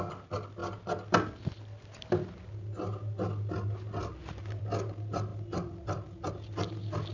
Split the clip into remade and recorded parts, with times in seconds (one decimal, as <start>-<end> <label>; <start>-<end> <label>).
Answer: 0.0-7.1 recorded